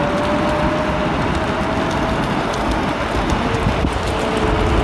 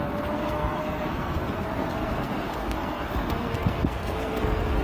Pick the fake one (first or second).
second